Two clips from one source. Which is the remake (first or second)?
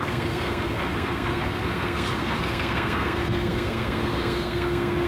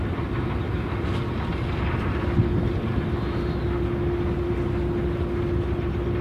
first